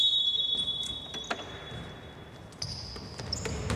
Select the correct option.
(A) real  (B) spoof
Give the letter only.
A